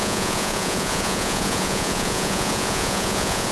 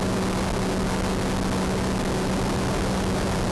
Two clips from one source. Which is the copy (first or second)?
first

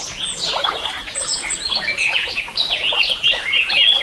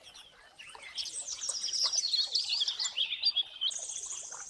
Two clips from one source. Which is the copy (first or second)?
first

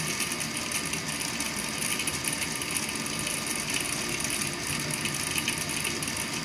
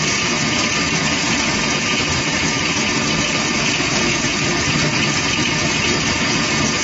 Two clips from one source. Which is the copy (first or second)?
second